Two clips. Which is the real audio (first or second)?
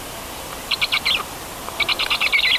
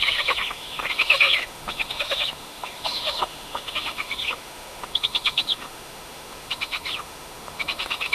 first